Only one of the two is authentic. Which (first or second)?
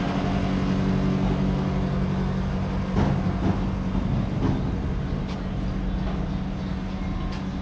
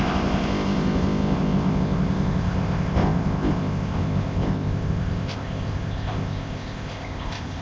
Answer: first